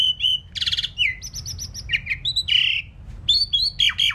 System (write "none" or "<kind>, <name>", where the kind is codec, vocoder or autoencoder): none